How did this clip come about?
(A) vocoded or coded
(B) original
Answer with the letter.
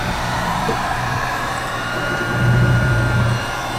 A